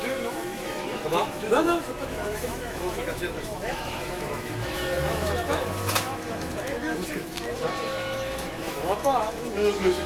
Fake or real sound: fake